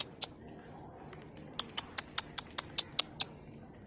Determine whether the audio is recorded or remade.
remade